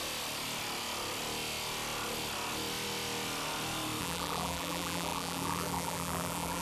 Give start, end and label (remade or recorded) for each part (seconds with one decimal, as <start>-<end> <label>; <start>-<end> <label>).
0.0-4.0 recorded; 4.0-6.6 remade